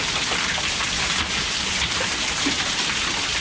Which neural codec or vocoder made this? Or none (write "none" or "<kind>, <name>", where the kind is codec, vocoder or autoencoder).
vocoder, BigVGAN v2